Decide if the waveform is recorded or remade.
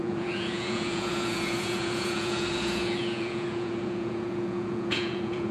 remade